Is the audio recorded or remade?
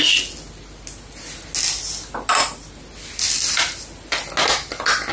recorded